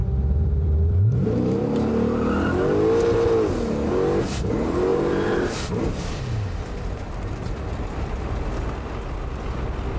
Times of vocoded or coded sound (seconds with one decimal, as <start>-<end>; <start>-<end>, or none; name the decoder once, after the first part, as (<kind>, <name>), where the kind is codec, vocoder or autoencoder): 0.0-1.9 (vocoder, BigVGAN v2); 4.9-6.2